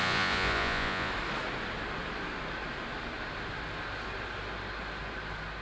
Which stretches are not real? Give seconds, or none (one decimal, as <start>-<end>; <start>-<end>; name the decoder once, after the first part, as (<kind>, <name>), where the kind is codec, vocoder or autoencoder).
0.0-1.1 (vocoder, Vocos)